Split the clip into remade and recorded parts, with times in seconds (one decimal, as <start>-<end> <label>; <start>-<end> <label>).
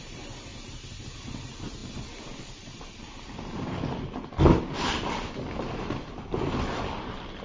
0.0-7.4 recorded